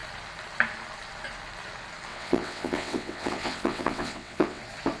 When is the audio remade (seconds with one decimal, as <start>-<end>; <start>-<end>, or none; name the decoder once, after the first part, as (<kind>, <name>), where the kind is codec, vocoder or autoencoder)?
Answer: 2.1-4.6 (vocoder, WaveNeXt)